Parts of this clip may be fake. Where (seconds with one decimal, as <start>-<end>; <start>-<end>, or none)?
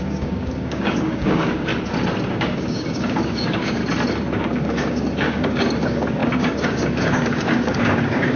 0.0-1.7; 2.3-3.8; 4.4-8.4